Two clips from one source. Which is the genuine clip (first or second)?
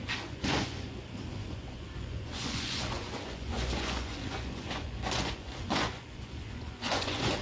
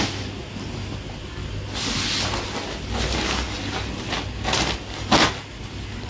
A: second